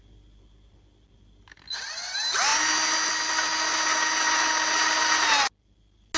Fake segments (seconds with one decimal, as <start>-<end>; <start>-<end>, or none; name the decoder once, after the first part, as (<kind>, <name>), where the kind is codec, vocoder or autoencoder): none